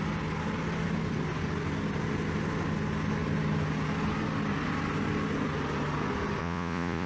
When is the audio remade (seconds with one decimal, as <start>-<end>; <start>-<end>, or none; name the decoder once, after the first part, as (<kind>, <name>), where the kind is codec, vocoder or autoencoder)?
6.4-7.1 (vocoder, Vocos)